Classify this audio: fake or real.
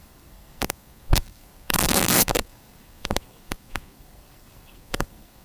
fake